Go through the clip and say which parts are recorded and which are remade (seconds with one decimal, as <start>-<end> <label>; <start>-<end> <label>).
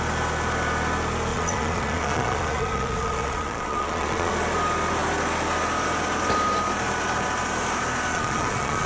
0.0-1.3 recorded; 1.3-4.3 remade; 4.3-8.1 recorded; 8.1-8.9 remade